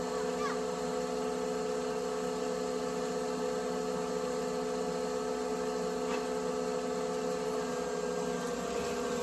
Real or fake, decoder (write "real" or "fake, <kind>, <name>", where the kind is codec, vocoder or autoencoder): real